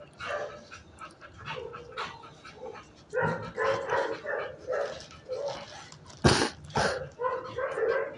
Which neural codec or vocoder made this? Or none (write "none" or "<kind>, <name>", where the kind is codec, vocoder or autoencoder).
none